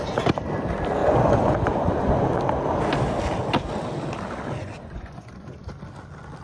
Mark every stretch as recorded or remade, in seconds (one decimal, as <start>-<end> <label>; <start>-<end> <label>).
0.0-1.0 recorded; 1.0-2.4 remade; 2.4-4.6 recorded; 4.6-5.7 remade; 5.7-6.4 recorded